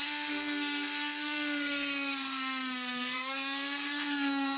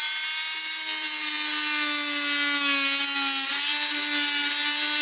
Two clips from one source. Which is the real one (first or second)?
second